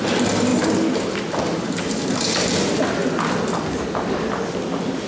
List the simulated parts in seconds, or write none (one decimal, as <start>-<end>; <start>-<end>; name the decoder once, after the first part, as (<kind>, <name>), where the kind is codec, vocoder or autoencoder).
none